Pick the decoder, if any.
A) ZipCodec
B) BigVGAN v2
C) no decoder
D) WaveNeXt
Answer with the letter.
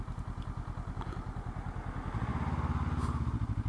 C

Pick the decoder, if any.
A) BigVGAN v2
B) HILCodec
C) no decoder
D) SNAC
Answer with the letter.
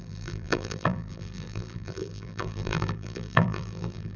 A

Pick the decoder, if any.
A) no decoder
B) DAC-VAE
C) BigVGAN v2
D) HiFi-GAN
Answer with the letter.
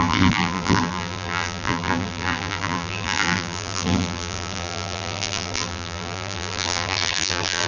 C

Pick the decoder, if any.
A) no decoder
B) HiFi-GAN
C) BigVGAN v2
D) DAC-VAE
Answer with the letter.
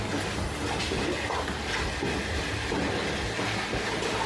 A